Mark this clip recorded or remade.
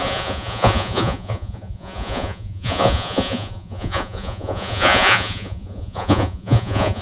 remade